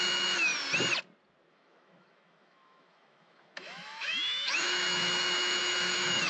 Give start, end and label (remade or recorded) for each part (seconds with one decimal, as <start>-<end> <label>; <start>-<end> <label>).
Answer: 0.0-0.5 remade; 0.5-1.5 recorded; 1.5-6.3 remade